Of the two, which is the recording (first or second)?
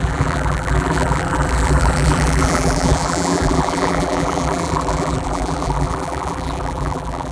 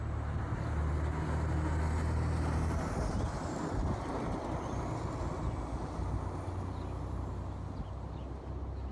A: second